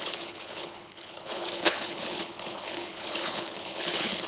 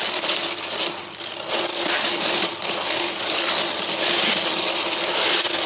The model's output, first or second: first